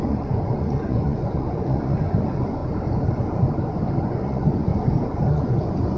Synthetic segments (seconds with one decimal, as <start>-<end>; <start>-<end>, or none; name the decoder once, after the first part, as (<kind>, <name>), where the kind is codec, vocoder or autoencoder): 0.0-2.6 (vocoder, Vocos); 4.0-4.7; 5.3-6.0